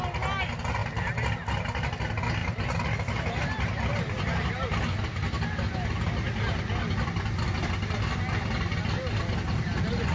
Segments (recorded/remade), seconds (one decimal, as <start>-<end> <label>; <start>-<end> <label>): 0.0-2.4 recorded; 2.4-3.4 remade; 3.4-10.1 recorded